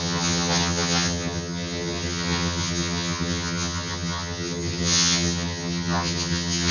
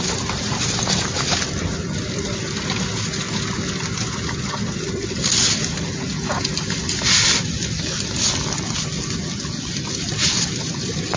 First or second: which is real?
second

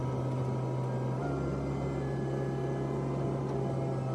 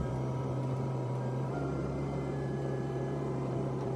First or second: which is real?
first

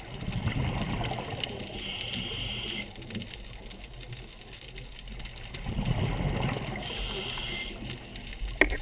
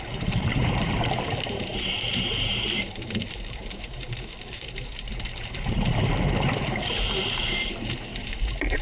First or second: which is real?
first